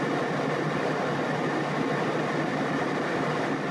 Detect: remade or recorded recorded